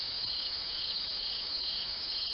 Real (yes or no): no